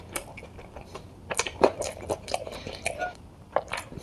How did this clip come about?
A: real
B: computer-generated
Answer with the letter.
B